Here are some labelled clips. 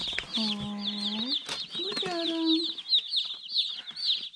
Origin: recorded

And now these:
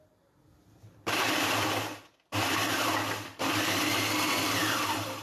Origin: recorded